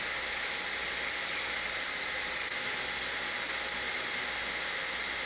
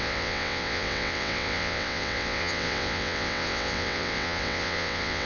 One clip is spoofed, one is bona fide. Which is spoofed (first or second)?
second